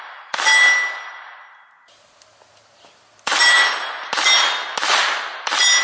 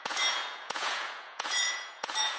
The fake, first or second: second